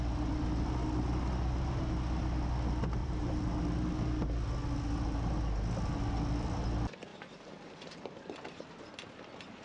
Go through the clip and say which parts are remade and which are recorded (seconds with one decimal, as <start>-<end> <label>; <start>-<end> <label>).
0.0-3.0 recorded; 3.0-3.5 remade; 3.5-7.1 recorded; 7.1-8.7 remade; 8.7-9.6 recorded